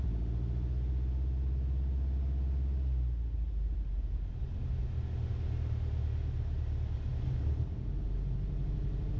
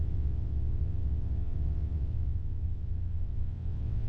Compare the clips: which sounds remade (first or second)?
second